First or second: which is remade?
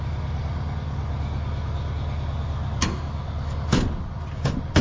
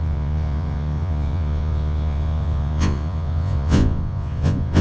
second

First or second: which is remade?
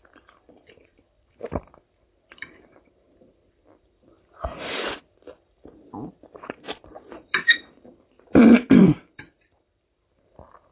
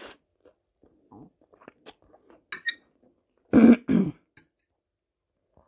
first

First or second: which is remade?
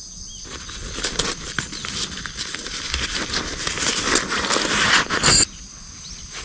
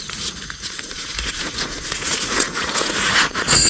second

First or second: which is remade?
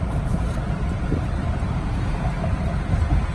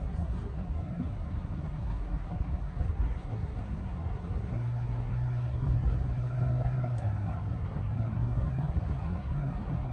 second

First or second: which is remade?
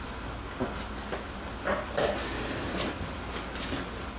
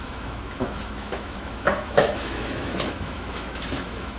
second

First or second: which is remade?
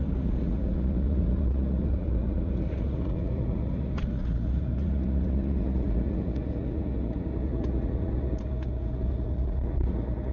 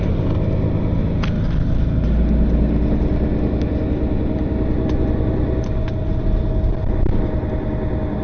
first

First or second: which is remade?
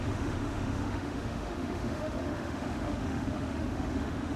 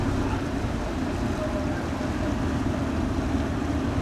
first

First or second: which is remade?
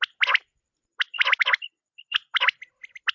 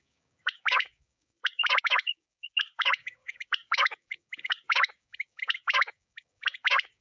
second